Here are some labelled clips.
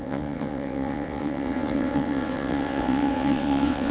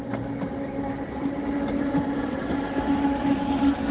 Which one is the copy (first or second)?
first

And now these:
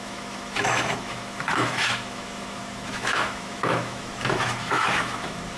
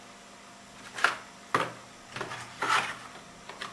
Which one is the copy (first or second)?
first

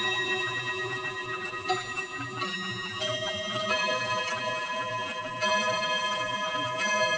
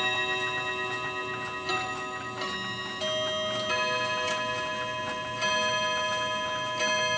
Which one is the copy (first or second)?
first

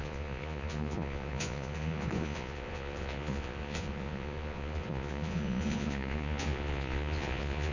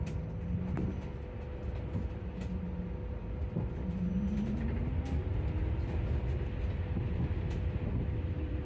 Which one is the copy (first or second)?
first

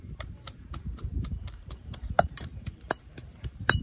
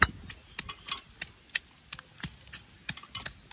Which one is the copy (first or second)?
first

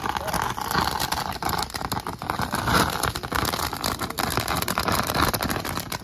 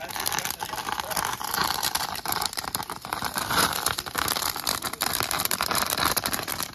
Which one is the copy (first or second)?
second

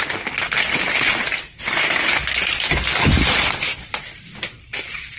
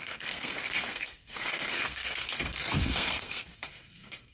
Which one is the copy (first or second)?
second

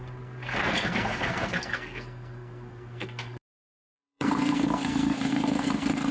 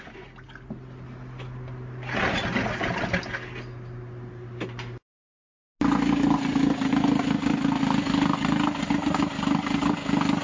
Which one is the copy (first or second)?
first